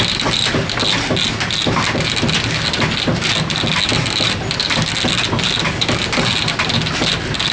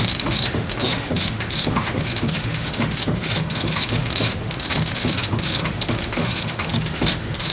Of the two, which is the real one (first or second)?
first